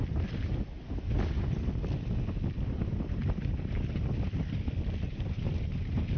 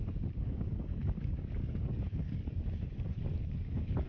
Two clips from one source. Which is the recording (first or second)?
first